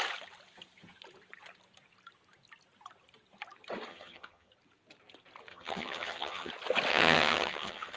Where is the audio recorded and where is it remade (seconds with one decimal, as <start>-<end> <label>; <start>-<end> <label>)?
0.0-3.9 recorded; 3.9-4.5 remade; 4.5-5.5 recorded; 5.5-6.5 remade; 6.5-6.9 recorded; 6.9-8.0 remade